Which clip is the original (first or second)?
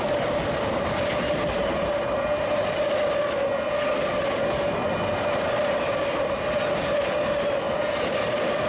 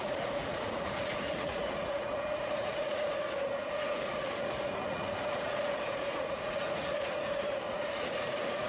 first